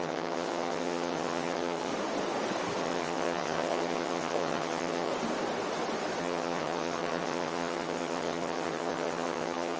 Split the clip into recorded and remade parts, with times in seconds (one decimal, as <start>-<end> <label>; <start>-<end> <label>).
0.0-1.9 remade; 1.9-2.8 recorded; 2.8-5.1 remade; 5.1-6.2 recorded; 6.2-9.8 remade